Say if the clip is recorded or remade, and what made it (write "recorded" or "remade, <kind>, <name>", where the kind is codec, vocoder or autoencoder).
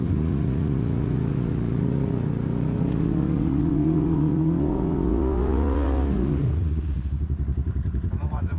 remade, vocoder, Vocos